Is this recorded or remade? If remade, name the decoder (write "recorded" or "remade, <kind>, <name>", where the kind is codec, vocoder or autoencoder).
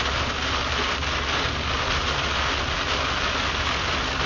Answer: recorded